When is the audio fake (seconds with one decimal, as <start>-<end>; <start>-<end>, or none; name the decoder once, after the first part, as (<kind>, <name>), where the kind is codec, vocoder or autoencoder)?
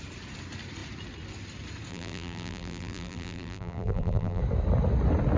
1.9-4.4 (vocoder, BigVGAN v2)